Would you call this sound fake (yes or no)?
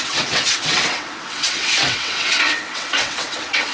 yes